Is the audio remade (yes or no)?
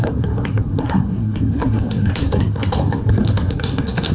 yes